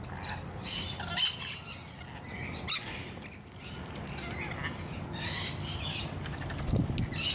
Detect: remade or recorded recorded